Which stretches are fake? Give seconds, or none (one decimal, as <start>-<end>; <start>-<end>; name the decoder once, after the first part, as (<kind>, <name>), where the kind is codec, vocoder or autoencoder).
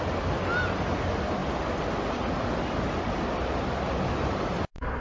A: none